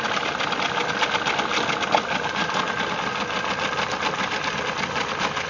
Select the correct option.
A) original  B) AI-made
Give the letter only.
A